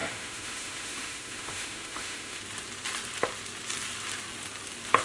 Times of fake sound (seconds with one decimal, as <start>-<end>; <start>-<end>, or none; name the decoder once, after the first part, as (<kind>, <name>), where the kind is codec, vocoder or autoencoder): 0.0-2.4 (autoencoder, DAC-VAE)